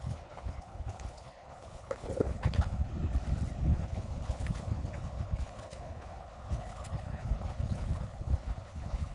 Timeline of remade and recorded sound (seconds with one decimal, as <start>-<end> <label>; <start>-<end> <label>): 0.0-2.9 remade; 2.9-3.6 recorded; 3.6-9.1 remade